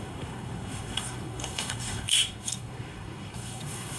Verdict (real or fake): fake